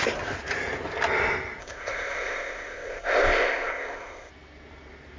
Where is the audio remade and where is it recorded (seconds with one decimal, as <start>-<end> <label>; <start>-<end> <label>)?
0.0-1.6 recorded; 1.6-4.3 remade; 4.3-5.2 recorded